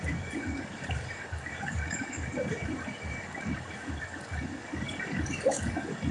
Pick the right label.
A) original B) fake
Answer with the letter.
B